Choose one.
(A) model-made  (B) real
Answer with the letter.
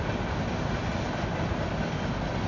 B